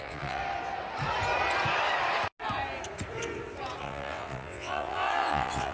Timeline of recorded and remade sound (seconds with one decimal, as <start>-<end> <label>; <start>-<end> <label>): 0.0-0.4 remade; 0.4-3.8 recorded; 3.8-5.7 remade